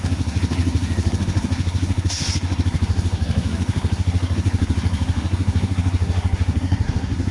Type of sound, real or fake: fake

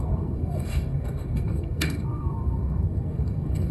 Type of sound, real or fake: fake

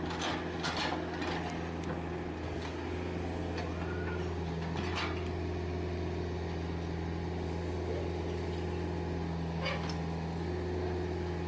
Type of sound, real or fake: real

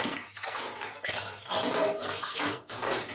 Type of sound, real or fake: fake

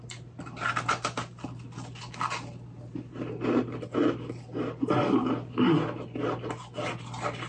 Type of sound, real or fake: real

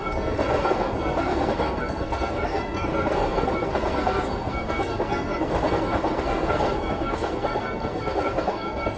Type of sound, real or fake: fake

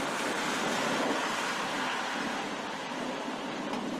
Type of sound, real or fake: real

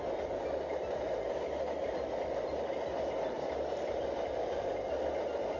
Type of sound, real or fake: real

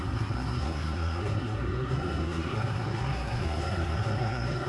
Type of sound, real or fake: fake